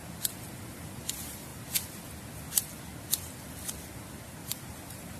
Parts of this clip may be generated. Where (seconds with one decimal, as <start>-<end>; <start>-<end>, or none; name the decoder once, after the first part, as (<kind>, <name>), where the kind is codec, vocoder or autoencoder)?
4.4-5.2 (vocoder, BigVGAN v2)